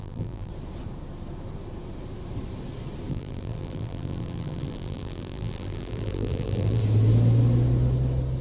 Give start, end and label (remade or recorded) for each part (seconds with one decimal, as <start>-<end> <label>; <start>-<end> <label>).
0.0-0.5 remade; 0.5-3.1 recorded; 3.1-6.8 remade; 6.8-8.4 recorded